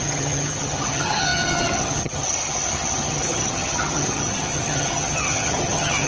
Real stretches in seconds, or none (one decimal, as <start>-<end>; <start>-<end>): none